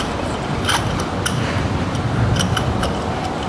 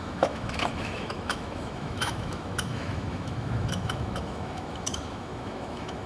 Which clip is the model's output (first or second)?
second